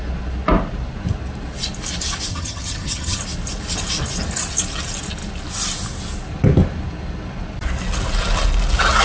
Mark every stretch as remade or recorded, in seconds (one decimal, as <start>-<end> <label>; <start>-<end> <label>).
0.0-2.3 recorded; 2.3-3.2 remade; 3.2-9.0 recorded